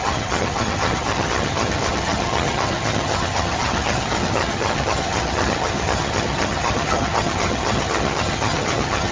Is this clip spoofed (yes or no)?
yes